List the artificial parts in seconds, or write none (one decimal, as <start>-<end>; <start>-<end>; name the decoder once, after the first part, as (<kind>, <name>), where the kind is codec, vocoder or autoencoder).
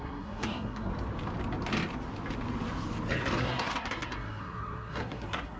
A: 0.0-0.9 (codec, SNAC); 3.4-5.6